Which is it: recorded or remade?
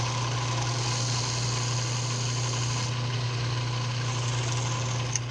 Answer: recorded